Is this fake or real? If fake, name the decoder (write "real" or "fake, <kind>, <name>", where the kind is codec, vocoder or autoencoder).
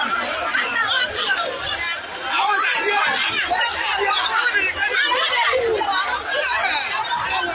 real